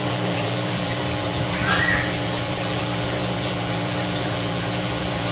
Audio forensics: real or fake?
fake